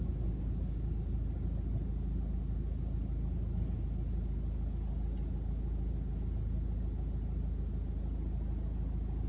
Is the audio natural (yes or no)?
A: yes